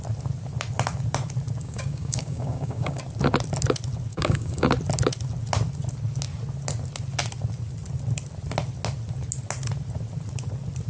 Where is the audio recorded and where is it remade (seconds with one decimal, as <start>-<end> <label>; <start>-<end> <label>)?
0.0-1.6 recorded; 1.6-3.0 remade; 3.0-4.1 recorded; 4.1-4.7 remade; 4.7-10.9 recorded